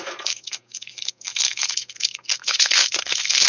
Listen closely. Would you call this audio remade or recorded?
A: remade